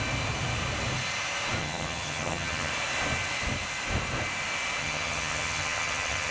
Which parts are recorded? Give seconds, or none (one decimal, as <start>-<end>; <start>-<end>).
0.0-1.6; 2.7-4.8